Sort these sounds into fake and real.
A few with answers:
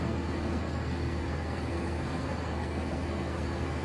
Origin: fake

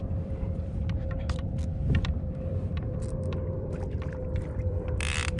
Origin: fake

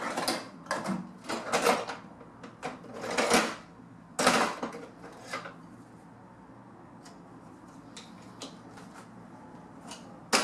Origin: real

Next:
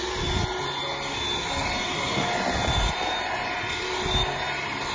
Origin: real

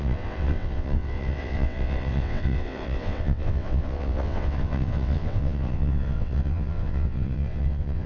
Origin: fake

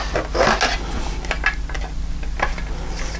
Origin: real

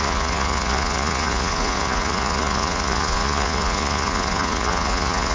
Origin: fake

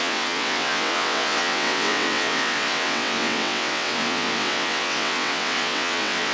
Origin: fake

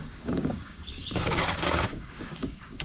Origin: fake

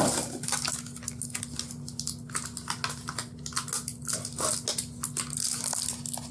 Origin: real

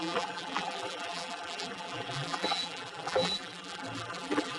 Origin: fake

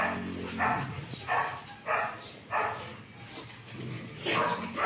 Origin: real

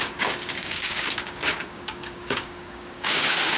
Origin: fake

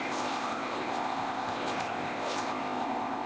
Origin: fake